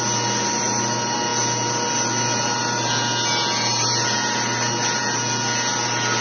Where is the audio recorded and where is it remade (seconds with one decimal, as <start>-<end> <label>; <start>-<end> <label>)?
0.0-6.2 recorded